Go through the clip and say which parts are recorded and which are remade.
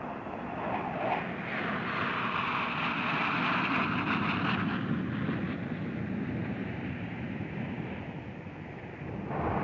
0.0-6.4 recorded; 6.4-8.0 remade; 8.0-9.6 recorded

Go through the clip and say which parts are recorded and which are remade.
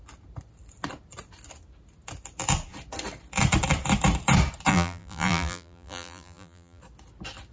0.0-4.7 recorded; 4.7-6.8 remade; 6.8-7.5 recorded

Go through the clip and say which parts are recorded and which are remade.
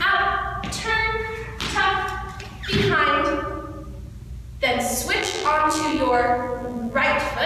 0.0-5.2 recorded; 5.2-7.0 remade; 7.0-7.5 recorded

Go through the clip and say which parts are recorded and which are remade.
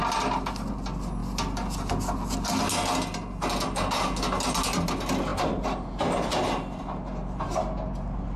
0.0-5.3 recorded; 5.3-8.4 remade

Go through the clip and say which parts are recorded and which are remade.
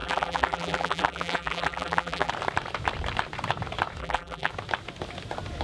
0.0-2.3 remade; 2.3-4.0 recorded; 4.0-4.5 remade; 4.5-5.6 recorded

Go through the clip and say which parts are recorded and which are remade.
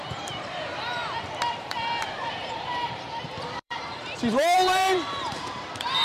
0.0-1.0 remade; 1.0-1.5 recorded; 1.5-6.0 remade